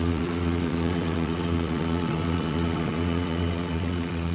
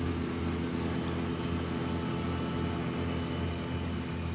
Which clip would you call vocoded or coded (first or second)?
first